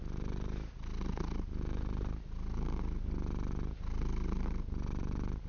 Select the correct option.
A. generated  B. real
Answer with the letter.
B